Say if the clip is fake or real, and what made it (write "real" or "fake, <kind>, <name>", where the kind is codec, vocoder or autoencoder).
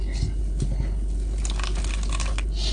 real